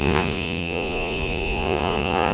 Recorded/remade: remade